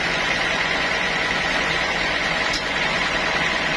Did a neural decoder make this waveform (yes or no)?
yes